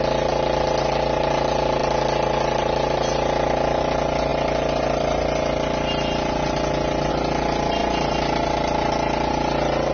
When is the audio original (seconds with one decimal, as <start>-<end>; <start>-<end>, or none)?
0.0-9.9